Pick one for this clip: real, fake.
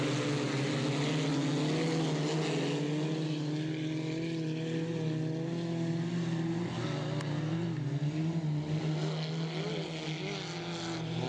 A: real